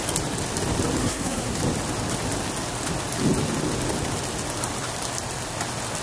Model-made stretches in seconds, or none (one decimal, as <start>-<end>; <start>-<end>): 1.0-1.6